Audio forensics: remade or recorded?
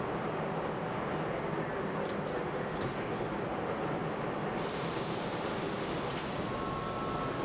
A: recorded